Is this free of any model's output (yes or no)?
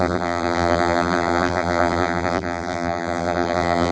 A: no